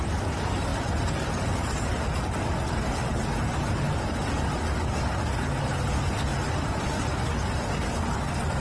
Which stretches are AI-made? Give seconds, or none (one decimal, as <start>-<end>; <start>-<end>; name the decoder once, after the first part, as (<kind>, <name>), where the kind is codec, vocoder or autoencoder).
none